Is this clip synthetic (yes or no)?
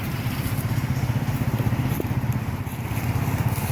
no